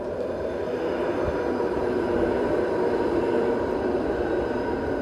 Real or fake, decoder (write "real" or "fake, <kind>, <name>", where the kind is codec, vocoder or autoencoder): real